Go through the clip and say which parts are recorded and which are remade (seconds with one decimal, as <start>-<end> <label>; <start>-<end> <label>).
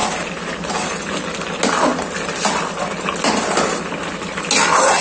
0.0-5.0 recorded